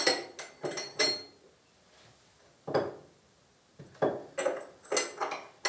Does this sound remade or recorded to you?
recorded